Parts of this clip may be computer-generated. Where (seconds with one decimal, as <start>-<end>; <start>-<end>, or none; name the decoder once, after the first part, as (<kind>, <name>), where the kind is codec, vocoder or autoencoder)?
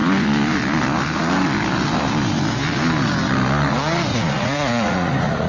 4.1-5.5 (vocoder, Vocos)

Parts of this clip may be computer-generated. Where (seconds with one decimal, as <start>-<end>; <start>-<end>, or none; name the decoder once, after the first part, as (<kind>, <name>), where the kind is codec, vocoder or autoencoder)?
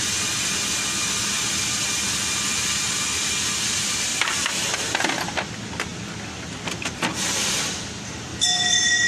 8.3-9.1 (vocoder, BigVGAN v2)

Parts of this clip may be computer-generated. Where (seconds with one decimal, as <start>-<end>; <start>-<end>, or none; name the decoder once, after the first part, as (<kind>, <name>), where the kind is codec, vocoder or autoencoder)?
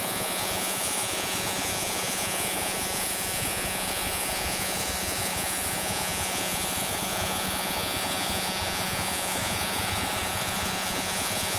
0.0-11.6 (vocoder, Vocos)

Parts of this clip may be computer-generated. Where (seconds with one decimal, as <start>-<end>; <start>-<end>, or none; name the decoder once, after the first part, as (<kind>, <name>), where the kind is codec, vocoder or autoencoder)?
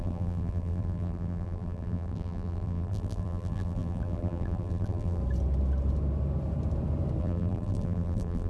0.0-5.2 (vocoder, BigVGAN v2); 7.2-8.5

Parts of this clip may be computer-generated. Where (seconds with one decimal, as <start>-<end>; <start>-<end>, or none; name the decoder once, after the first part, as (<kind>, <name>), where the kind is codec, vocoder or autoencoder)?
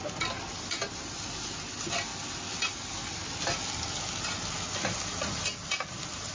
none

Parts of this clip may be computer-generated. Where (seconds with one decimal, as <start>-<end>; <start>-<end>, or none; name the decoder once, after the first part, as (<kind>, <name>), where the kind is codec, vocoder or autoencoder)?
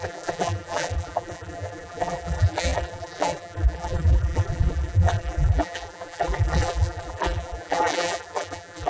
0.0-8.9 (vocoder, BigVGAN v2)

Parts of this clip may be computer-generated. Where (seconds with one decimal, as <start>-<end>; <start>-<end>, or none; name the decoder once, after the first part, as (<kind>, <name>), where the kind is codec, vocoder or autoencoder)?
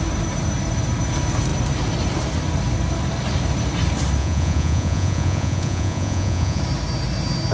4.2-6.6 (vocoder, Vocos)